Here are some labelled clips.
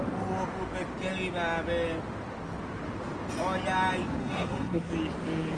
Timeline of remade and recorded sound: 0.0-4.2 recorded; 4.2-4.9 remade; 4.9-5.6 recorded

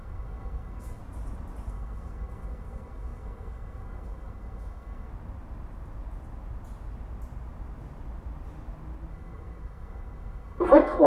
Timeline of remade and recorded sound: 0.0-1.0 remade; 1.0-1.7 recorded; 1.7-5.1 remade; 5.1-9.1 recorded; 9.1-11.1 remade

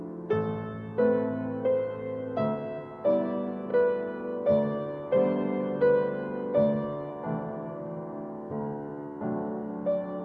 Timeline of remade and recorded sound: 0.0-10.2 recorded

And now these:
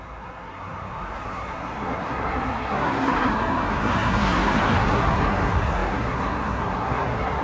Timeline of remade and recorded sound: 0.0-7.4 remade